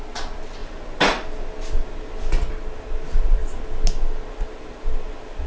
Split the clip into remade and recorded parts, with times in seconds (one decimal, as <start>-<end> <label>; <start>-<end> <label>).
0.0-5.5 recorded